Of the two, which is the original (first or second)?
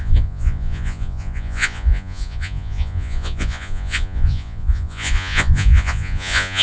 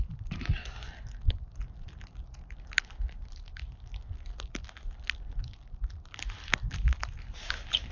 second